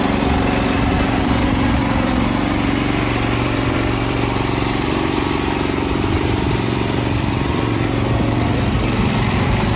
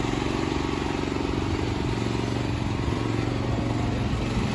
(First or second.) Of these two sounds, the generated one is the first